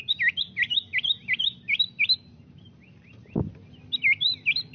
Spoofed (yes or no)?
no